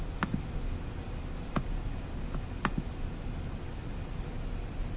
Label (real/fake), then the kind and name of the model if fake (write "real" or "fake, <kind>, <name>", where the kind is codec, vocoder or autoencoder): real